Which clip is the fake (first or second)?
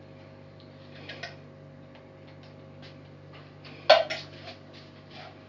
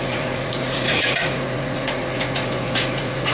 second